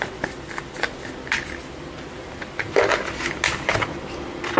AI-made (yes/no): no